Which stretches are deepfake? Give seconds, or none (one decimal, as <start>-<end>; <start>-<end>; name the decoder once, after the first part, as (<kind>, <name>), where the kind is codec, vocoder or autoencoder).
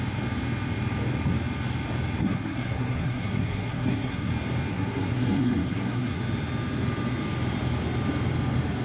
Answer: 2.2-4.3 (codec, SNAC); 4.7-6.2